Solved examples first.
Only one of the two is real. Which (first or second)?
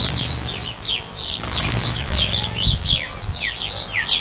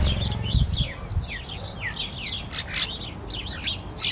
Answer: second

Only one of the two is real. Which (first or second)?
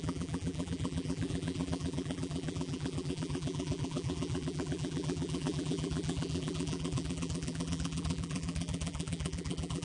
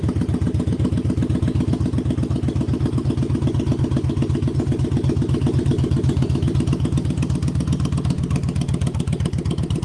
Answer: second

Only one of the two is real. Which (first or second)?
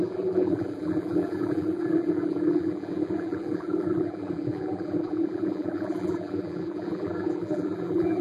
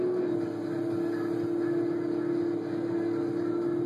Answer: second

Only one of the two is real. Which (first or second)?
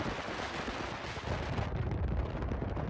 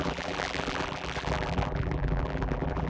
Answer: first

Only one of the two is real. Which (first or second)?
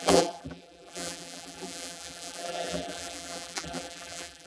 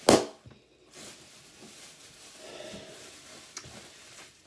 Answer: second